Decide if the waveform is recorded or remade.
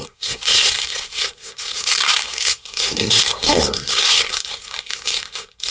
remade